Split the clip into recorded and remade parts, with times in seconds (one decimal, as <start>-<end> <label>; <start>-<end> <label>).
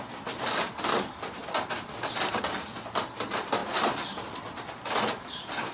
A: 0.0-5.7 recorded